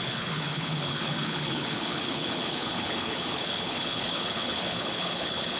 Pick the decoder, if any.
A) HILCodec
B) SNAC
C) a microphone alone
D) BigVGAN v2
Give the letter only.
A